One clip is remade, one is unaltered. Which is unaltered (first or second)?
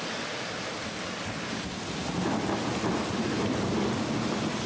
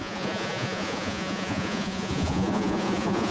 first